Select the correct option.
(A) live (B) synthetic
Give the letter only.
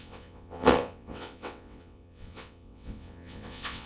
B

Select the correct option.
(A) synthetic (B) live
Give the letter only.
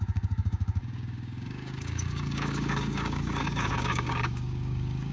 A